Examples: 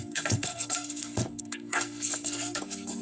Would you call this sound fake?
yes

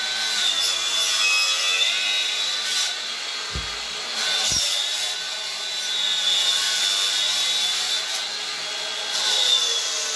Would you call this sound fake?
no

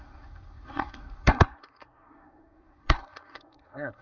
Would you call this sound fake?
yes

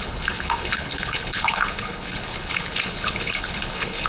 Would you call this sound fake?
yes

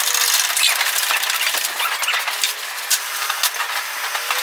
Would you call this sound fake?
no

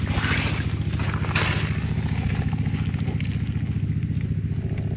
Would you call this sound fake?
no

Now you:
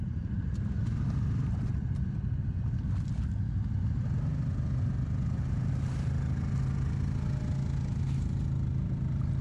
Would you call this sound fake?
no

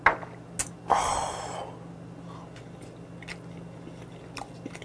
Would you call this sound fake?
no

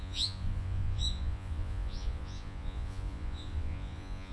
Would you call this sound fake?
yes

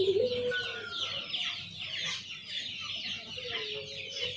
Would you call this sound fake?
no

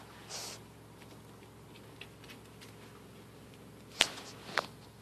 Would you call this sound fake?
no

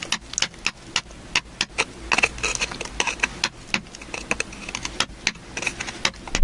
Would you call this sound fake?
no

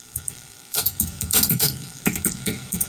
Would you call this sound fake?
yes